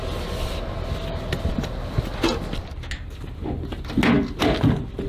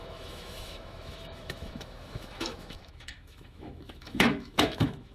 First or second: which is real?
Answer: first